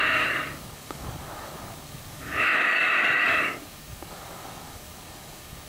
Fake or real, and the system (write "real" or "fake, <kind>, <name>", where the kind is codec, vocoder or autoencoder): fake, codec, DAC